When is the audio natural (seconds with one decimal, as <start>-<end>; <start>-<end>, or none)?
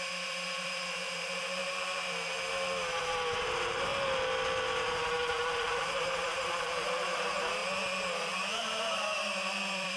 3.9-5.4; 7.6-8.6